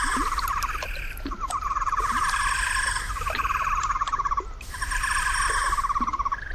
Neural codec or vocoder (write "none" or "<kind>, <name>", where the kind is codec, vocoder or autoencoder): none